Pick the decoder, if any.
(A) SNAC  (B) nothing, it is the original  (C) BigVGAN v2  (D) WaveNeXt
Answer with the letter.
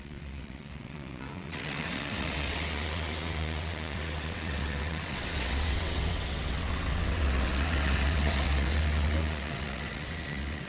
D